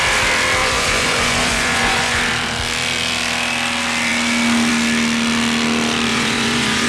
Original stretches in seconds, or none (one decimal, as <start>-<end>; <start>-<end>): 0.0-0.6; 2.2-6.1

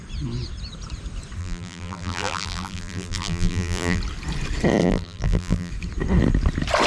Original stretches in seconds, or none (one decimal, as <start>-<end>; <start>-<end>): 0.0-1.4; 4.0-4.8; 5.7-6.9